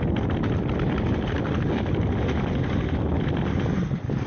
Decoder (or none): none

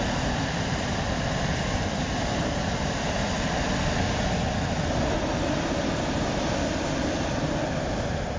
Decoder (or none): none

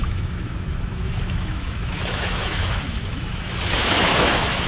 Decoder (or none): autoencoder, DAC-VAE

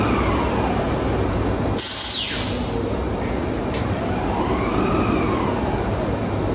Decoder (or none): none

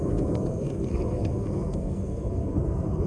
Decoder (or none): codec, SNAC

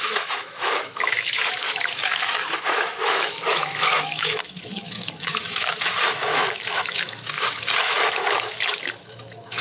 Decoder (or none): autoencoder, DAC-VAE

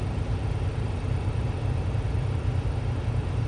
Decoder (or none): vocoder, BigVGAN v2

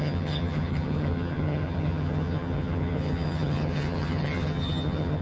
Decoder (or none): vocoder, HiFi-GAN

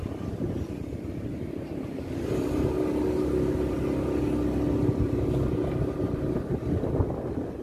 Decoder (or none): none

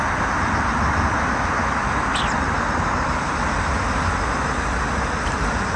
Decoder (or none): none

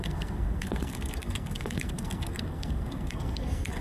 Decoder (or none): codec, SNAC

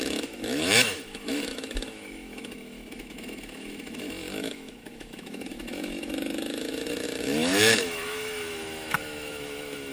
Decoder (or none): autoencoder, DAC-VAE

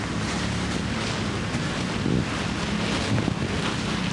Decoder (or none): none